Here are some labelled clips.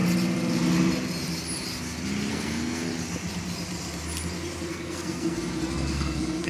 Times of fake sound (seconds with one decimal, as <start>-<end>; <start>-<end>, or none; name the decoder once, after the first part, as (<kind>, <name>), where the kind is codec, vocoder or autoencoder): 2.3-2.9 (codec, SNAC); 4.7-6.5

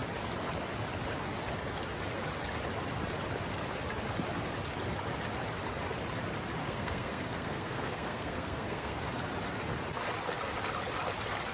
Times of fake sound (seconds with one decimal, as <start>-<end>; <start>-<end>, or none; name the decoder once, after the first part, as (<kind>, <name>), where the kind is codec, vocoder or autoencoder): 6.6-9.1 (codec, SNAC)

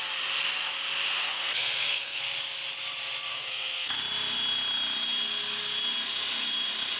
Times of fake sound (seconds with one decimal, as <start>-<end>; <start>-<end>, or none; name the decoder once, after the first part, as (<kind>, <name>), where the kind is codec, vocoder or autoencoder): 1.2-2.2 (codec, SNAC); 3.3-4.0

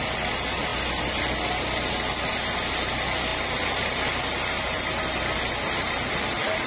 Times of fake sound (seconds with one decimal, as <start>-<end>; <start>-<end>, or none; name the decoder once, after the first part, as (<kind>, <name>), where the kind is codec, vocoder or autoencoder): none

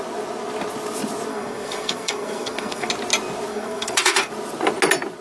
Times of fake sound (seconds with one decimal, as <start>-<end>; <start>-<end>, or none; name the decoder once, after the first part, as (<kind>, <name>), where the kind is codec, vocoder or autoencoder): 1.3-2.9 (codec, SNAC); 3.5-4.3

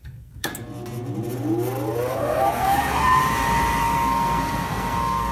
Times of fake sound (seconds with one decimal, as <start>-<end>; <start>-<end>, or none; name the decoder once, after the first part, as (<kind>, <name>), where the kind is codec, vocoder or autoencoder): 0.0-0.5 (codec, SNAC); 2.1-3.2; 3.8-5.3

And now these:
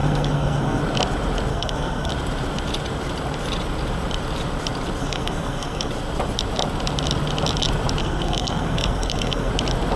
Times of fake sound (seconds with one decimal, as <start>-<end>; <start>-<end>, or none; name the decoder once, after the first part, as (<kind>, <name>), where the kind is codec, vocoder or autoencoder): 0.0-0.8 (codec, SNAC); 1.5-2.1; 5.0-5.9; 8.0-9.5

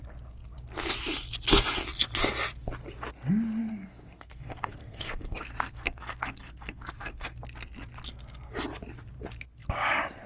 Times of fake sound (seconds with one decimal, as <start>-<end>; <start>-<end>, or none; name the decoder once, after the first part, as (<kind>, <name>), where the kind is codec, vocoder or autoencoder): 3.7-7.4 (codec, SNAC)